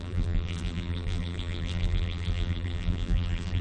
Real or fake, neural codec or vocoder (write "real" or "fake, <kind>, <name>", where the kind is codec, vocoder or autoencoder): fake, vocoder, BigVGAN v2